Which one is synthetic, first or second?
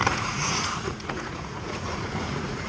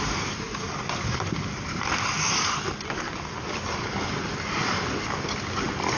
first